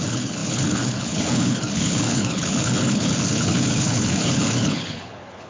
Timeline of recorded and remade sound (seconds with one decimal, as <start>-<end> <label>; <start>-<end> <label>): 0.0-5.5 remade